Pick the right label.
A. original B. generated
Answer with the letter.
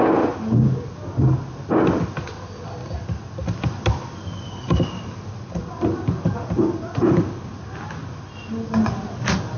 A